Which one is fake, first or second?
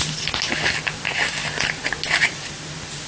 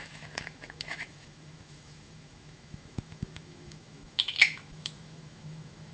second